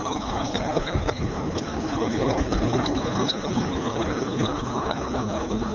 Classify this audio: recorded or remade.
remade